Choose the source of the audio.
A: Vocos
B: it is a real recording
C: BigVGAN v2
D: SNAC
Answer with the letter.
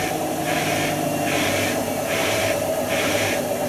C